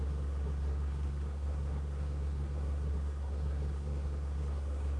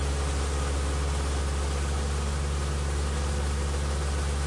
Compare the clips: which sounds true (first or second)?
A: second